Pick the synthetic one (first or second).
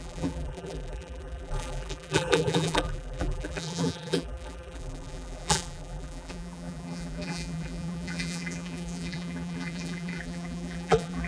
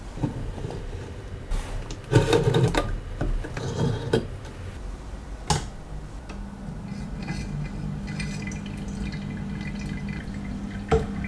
first